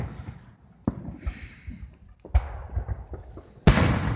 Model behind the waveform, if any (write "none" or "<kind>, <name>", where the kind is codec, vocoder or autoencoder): none